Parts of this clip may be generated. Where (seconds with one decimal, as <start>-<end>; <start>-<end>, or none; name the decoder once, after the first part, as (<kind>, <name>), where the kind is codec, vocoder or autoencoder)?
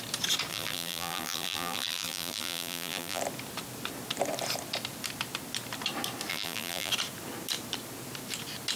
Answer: 0.5-3.2 (vocoder, BigVGAN v2); 6.3-6.9